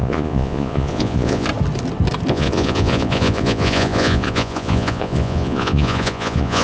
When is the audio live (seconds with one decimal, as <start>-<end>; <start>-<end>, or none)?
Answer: 1.5-2.3